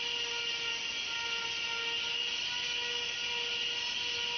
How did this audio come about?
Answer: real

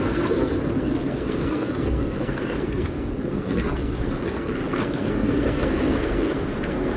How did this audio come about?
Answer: fake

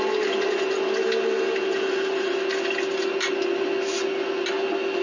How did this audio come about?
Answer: real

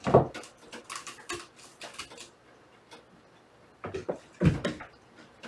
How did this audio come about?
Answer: real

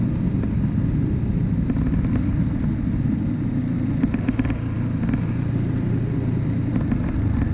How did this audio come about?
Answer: fake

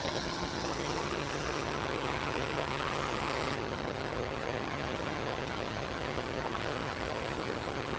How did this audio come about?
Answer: fake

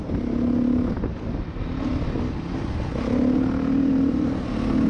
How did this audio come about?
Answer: real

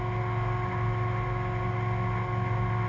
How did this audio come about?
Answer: real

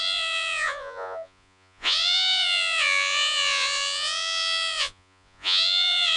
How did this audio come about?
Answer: fake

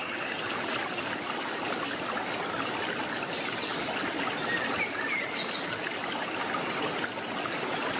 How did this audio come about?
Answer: real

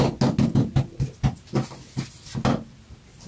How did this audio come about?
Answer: real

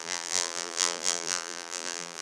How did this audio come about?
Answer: fake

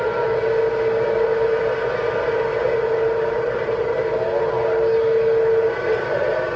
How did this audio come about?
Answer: real